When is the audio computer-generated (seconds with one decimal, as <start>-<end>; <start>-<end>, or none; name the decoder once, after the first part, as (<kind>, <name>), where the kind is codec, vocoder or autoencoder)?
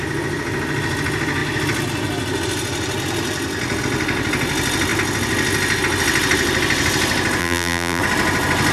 7.4-8.0 (vocoder, BigVGAN v2)